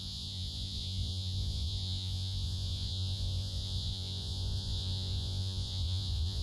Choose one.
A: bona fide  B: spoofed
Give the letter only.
B